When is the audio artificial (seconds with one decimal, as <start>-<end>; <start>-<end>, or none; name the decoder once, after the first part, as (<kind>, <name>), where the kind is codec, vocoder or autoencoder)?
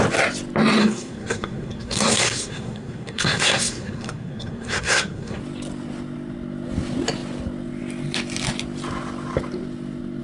0.8-5.4 (codec, SNAC)